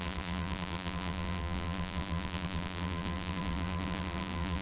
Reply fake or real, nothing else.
fake